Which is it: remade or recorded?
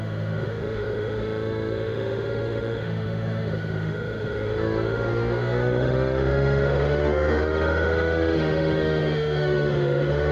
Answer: remade